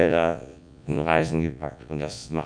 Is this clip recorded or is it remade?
remade